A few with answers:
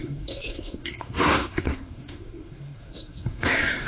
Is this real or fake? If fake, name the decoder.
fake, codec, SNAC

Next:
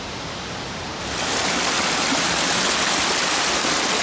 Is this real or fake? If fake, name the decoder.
real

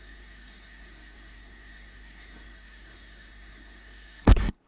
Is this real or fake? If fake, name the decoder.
fake, codec, SNAC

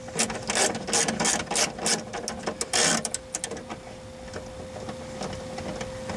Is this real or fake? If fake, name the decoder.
real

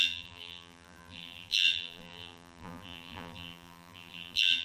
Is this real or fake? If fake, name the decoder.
fake, vocoder, BigVGAN v2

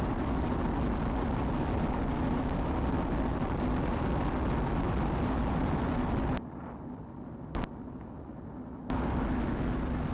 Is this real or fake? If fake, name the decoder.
real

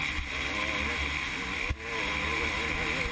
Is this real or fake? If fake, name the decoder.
real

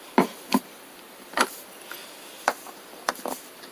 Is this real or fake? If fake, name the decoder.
fake, vocoder, BigVGAN v2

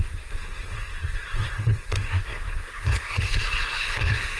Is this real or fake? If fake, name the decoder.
fake, codec, SNAC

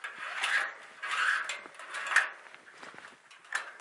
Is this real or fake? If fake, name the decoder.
real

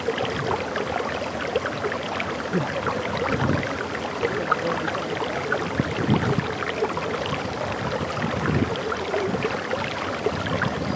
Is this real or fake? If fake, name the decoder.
real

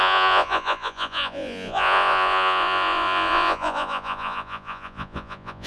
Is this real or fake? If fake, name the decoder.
fake, vocoder, Vocos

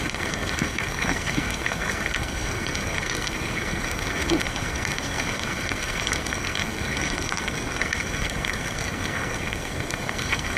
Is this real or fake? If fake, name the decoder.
fake, codec, SNAC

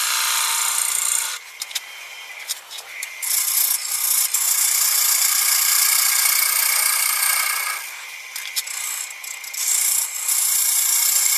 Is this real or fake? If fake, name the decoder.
fake, vocoder, BigVGAN v2